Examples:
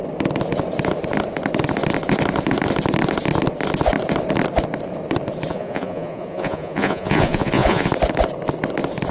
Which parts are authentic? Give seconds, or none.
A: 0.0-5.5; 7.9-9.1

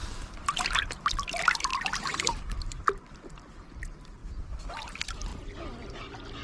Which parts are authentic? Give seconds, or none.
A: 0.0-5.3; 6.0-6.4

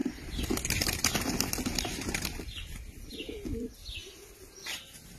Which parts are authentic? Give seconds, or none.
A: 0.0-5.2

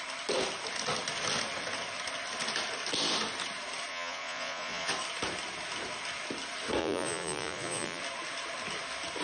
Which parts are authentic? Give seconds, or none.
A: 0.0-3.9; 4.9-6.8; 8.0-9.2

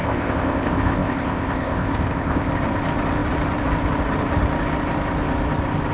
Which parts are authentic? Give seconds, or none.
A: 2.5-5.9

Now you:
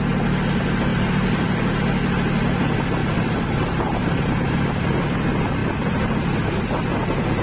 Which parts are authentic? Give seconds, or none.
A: 0.0-0.9; 1.8-3.0; 4.5-7.4